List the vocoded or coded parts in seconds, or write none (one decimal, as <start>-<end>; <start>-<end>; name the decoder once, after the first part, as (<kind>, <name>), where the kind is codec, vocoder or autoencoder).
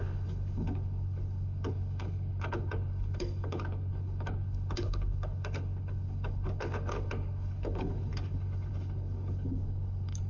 0.0-10.3 (codec, HILCodec)